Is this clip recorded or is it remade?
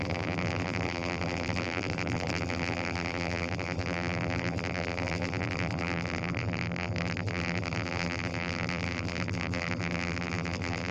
remade